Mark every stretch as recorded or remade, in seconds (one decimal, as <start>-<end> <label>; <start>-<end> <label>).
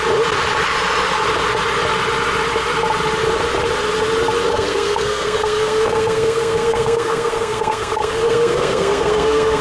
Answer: 0.0-4.5 recorded; 4.5-9.6 remade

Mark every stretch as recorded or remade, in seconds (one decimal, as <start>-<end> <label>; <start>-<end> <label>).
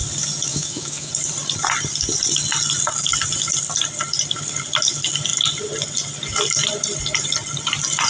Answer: 0.0-0.5 recorded; 0.5-1.1 remade; 1.1-8.1 recorded